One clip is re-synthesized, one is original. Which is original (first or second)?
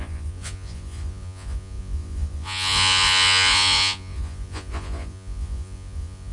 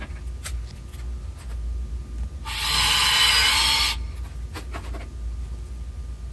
second